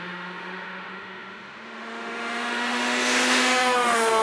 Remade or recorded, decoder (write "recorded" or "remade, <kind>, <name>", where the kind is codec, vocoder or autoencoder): remade, autoencoder, DAC-VAE